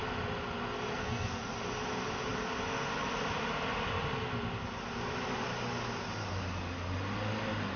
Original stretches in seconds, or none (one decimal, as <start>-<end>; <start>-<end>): 0.0-0.9; 1.4-7.8